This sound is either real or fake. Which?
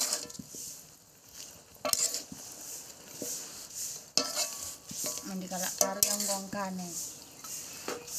real